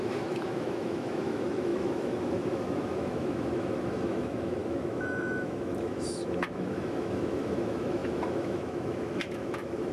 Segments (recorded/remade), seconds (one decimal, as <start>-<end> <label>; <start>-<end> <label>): 0.0-9.9 remade